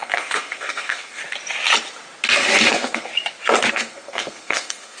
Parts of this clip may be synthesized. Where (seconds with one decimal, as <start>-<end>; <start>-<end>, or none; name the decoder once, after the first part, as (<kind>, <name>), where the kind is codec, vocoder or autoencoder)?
0.0-1.2 (codec, SNAC); 2.7-3.1; 3.7-5.0